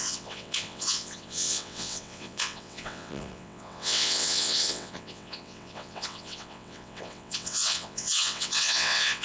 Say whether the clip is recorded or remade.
remade